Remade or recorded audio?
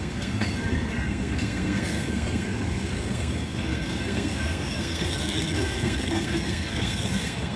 remade